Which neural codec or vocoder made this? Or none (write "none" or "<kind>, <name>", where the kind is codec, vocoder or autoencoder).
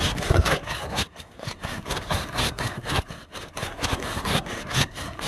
codec, SNAC